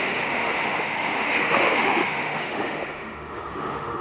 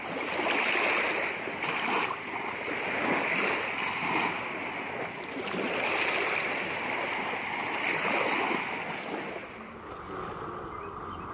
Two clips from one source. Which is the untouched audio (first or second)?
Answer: second